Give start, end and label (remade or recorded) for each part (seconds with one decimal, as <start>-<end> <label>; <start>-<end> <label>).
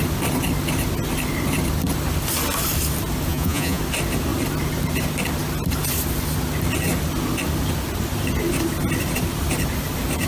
0.0-3.3 recorded; 3.3-3.8 remade; 3.8-10.3 recorded